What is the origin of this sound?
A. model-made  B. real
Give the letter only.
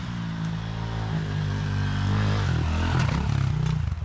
B